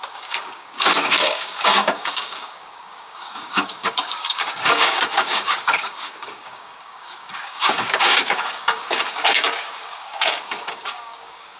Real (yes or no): no